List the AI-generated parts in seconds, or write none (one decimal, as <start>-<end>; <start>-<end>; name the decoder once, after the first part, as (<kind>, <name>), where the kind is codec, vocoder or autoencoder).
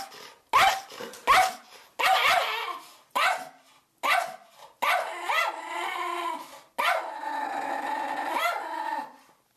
none